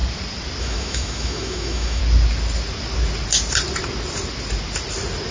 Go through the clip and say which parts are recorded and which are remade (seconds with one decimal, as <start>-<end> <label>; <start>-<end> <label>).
0.0-0.6 recorded; 0.6-2.0 remade; 2.0-5.3 recorded